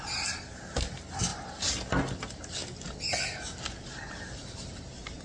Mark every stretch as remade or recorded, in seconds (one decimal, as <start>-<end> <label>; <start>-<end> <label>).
0.0-5.2 recorded